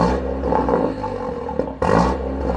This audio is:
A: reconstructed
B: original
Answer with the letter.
B